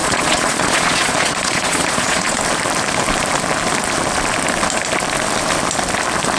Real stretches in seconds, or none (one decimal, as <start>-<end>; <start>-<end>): 2.4-6.4

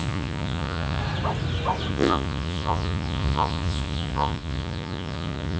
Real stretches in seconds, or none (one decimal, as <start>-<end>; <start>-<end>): 1.0-1.9

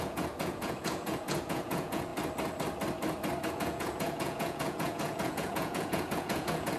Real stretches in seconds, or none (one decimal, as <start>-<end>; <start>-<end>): 2.1-3.5

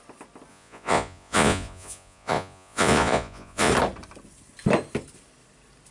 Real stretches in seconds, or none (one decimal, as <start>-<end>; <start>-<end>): 0.0-0.5; 3.7-5.9

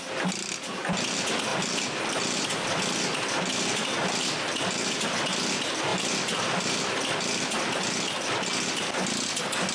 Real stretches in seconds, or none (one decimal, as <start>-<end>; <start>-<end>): 0.0-9.7

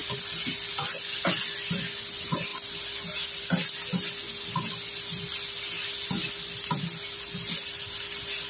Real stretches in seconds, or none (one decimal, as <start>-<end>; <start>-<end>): 0.0-8.5